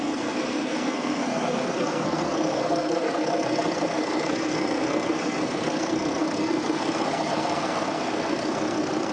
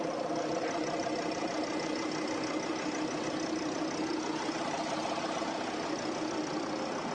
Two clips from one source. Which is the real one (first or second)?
second